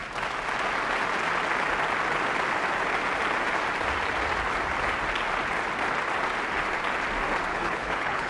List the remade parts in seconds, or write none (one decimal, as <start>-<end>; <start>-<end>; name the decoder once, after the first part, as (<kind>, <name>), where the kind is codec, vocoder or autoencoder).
7.5-8.3 (codec, HILCodec)

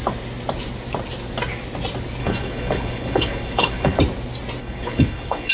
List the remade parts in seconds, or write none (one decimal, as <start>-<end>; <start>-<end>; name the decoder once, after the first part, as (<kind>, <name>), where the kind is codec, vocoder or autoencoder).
2.2-4.0 (codec, HILCodec); 4.6-5.5